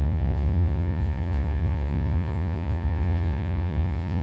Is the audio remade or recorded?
remade